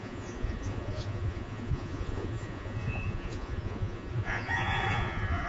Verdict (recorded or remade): remade